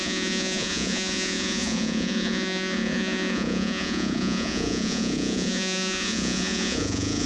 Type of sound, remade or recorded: remade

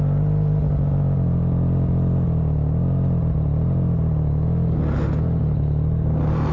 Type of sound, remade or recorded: recorded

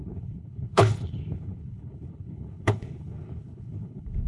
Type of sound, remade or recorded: remade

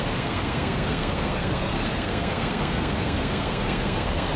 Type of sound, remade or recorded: remade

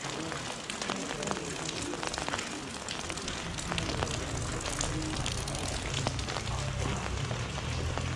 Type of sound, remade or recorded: recorded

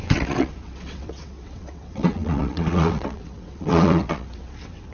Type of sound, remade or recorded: remade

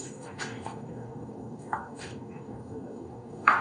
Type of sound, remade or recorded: remade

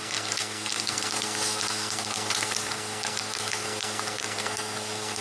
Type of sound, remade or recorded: remade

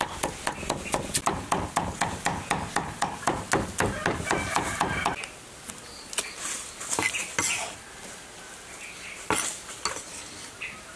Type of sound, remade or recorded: recorded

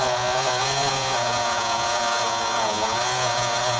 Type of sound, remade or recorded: remade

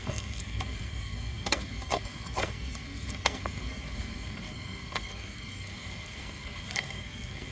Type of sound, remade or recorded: remade